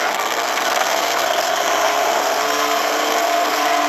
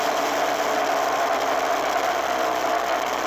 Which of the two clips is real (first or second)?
second